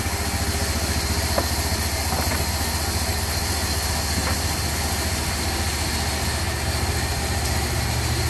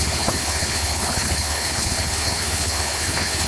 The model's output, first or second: second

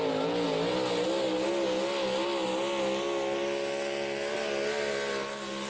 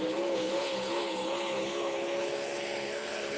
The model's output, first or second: second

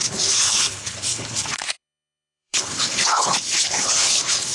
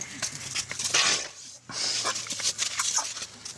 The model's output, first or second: first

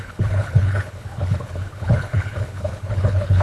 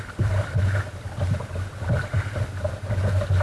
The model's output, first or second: first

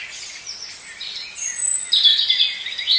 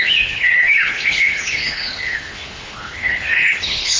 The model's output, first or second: second